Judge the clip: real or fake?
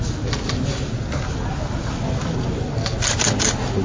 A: real